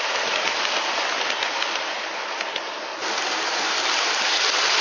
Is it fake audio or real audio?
real